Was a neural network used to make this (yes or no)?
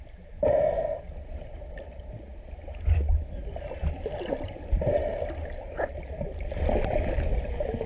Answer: no